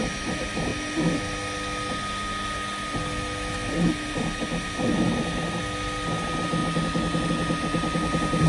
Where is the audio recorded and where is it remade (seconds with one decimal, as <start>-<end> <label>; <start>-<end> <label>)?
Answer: 0.0-8.5 recorded